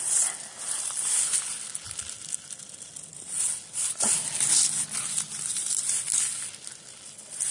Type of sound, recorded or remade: recorded